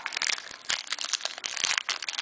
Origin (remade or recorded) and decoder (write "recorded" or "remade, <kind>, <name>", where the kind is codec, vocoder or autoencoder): recorded